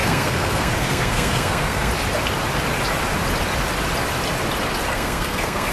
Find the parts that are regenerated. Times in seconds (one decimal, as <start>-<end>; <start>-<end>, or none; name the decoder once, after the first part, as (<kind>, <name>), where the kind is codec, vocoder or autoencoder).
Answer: 0.0-1.9 (codec, SNAC); 4.9-5.7